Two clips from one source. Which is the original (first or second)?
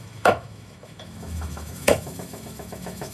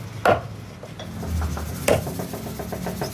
second